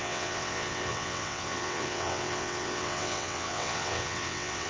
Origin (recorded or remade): remade